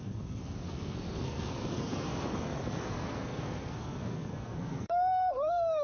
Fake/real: fake